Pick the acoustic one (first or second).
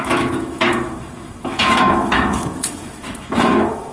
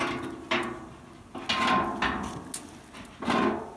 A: second